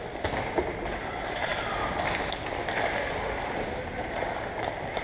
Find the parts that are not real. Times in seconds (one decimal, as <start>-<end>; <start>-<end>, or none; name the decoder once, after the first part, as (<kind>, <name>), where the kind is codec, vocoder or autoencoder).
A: none